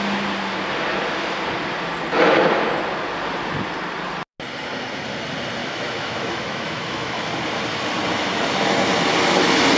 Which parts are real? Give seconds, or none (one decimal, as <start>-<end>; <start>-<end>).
0.0-5.6; 7.3-9.8